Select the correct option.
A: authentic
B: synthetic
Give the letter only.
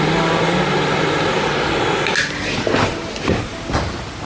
A